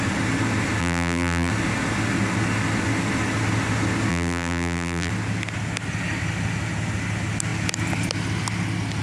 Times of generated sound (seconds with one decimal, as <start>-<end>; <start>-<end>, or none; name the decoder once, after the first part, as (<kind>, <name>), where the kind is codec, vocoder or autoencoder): 0.8-1.5 (vocoder, BigVGAN v2); 4.1-5.1